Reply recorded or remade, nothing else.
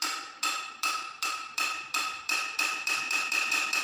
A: remade